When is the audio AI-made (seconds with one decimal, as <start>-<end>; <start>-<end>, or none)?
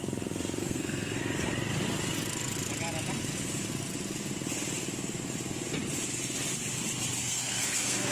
0.6-1.2; 7.2-8.1